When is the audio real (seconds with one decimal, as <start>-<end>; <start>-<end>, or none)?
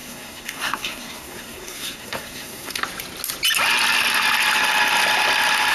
2.8-5.7